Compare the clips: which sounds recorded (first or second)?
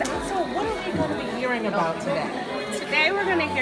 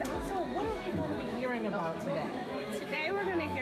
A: first